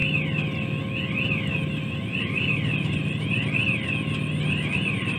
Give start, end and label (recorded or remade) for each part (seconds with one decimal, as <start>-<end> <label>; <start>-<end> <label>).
0.0-5.2 recorded